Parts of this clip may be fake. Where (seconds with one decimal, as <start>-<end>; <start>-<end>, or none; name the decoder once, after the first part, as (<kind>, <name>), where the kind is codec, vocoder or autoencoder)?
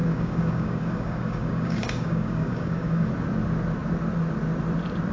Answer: 0.0-3.1 (codec, DAC)